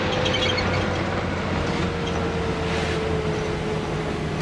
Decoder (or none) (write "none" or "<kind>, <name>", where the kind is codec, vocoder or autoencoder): none